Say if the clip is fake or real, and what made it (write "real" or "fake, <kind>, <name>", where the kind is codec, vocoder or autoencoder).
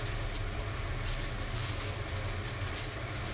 real